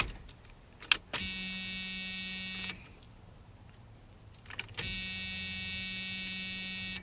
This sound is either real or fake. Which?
real